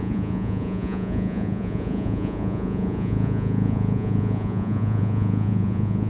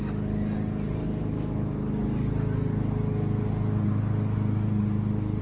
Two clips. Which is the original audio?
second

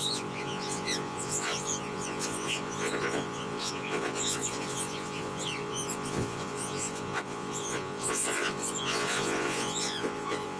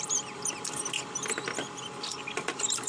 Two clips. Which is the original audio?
second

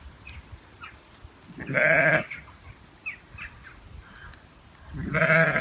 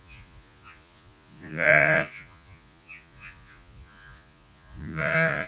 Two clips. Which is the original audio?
first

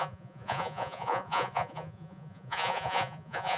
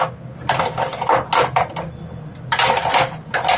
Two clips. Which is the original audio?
second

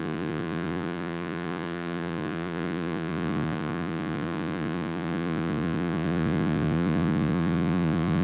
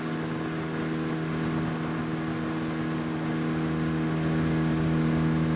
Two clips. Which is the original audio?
second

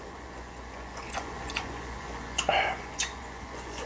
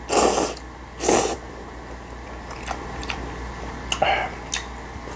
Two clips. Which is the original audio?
second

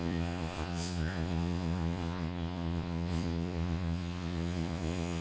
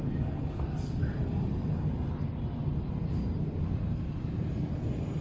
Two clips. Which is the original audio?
second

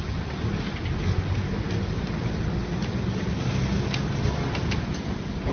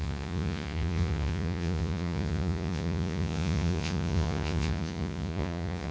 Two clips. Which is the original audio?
first